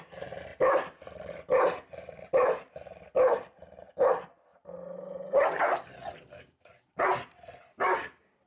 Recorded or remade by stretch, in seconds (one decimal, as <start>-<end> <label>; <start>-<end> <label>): 0.0-8.5 recorded